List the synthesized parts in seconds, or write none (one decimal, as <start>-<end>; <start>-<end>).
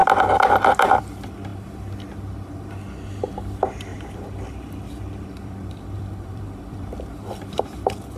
3.9-7.6